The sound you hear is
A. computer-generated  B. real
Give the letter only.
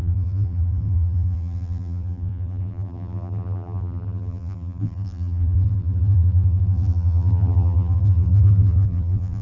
A